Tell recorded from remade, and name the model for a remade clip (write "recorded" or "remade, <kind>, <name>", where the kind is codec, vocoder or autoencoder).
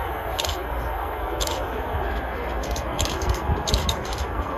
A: remade, codec, SNAC